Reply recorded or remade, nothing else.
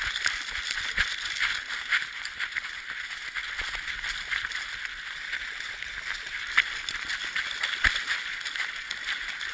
recorded